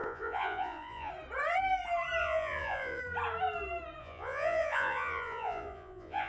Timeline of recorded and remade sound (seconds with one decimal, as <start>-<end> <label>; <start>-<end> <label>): 0.0-1.1 remade; 1.1-2.2 recorded; 2.2-3.0 remade; 3.0-4.0 recorded; 4.0-6.3 remade